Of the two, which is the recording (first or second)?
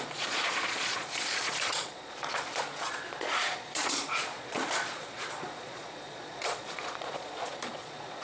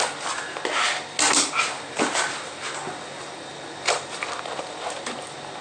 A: second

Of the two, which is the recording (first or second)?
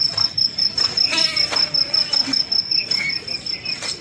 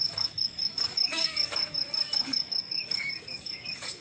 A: first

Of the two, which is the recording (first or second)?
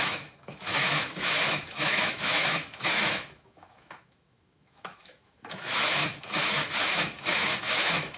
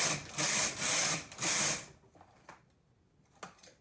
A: second